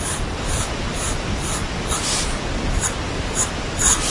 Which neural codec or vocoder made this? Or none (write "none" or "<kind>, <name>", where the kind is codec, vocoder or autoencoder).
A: none